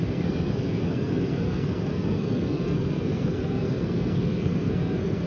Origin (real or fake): fake